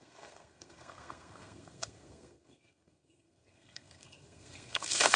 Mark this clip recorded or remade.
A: remade